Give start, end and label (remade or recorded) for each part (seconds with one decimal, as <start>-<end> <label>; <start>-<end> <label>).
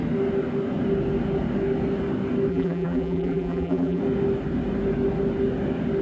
0.0-2.5 recorded; 2.5-4.0 remade; 4.0-6.0 recorded